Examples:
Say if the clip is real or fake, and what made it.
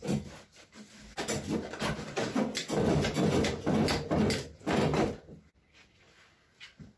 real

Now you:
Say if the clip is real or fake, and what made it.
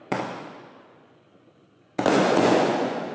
fake, vocoder, Vocos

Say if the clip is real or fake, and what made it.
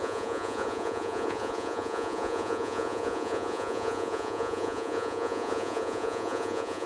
fake, vocoder, Vocos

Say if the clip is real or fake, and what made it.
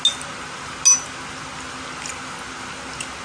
real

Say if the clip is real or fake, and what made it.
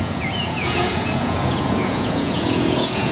fake, vocoder, Vocos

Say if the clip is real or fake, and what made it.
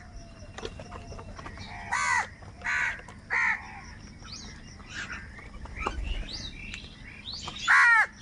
real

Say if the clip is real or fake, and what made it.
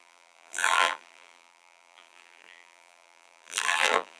fake, vocoder, BigVGAN v2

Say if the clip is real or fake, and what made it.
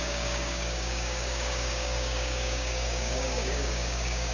fake, codec, DAC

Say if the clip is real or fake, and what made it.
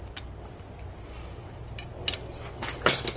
real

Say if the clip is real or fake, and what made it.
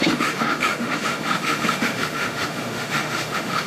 fake, autoencoder, DAC-VAE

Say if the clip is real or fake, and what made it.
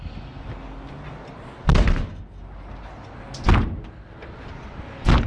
real